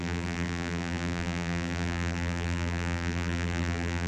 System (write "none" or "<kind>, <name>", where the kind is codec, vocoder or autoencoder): vocoder, BigVGAN v2